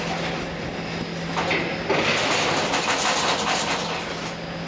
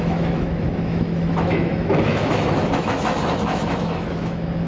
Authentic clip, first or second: first